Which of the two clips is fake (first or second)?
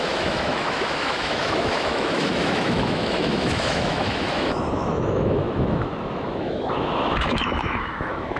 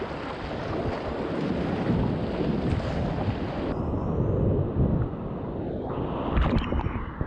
first